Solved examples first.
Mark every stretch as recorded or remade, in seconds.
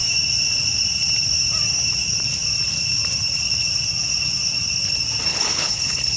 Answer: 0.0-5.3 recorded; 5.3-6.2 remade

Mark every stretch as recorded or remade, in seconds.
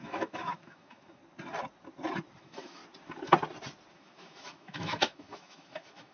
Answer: 0.0-1.2 remade; 1.2-2.4 recorded; 2.4-2.8 remade; 2.8-3.9 recorded; 3.9-6.1 remade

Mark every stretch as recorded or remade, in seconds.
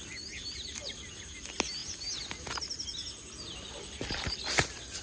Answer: 0.0-5.0 recorded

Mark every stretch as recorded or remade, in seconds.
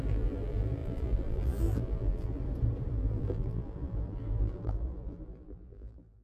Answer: 0.0-2.4 remade; 2.4-2.9 recorded; 2.9-6.2 remade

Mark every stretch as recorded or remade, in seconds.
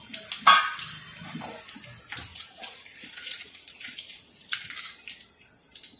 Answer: 0.0-2.3 recorded; 2.3-4.7 remade; 4.7-6.0 recorded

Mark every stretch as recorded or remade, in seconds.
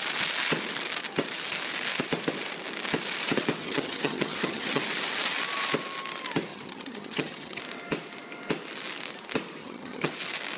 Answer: 0.0-3.6 recorded; 3.6-4.8 remade; 4.8-6.5 recorded; 6.5-7.6 remade; 7.6-9.6 recorded; 9.6-10.1 remade; 10.1-10.6 recorded